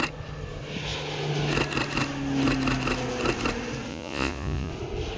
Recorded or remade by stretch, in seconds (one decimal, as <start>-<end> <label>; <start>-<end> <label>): 0.0-3.9 recorded; 3.9-4.7 remade; 4.7-5.2 recorded

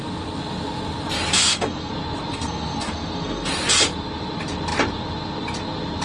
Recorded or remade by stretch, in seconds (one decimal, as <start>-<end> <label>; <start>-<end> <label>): 0.0-1.4 recorded; 1.4-1.9 remade; 1.9-2.3 recorded; 2.3-3.5 remade; 3.5-6.0 recorded

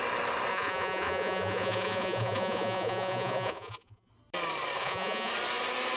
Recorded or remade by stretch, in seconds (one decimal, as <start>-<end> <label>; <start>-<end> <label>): 0.0-0.5 recorded; 0.5-4.1 remade; 4.1-4.8 recorded; 4.8-5.3 remade; 5.3-6.0 recorded

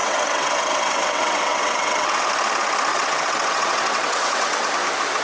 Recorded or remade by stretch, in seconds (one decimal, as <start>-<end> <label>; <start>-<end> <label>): 0.0-2.3 remade; 2.3-2.9 recorded; 2.9-4.7 remade; 4.7-5.2 recorded

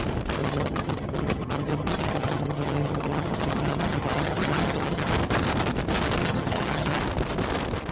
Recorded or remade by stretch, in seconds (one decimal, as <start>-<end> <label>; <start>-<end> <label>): 0.0-0.4 recorded; 0.4-5.1 remade; 5.1-6.2 recorded; 6.2-7.0 remade; 7.0-7.9 recorded